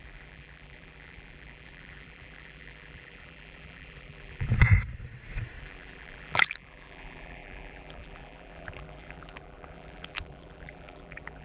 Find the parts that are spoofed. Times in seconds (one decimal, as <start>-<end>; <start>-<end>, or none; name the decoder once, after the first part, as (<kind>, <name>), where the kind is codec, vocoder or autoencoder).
0.0-4.5 (vocoder, BigVGAN v2); 5.6-11.4